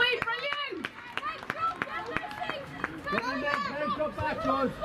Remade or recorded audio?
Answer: remade